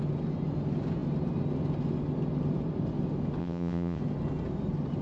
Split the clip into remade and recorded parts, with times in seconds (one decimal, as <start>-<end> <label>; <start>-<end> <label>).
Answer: 0.0-3.4 recorded; 3.4-4.0 remade; 4.0-5.0 recorded